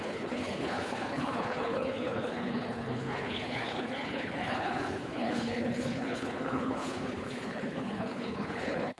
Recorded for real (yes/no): no